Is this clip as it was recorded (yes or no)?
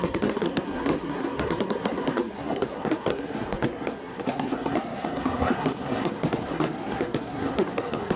no